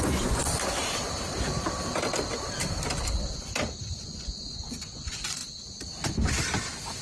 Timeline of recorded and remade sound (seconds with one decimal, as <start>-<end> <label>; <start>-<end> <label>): 0.0-0.4 remade; 0.4-4.0 recorded; 4.0-5.4 remade; 5.4-7.0 recorded